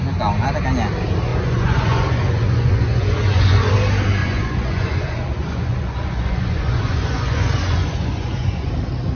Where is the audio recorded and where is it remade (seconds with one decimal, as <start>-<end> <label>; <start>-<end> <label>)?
0.0-1.3 recorded; 1.3-3.7 remade; 3.7-4.2 recorded; 4.2-8.7 remade; 8.7-9.2 recorded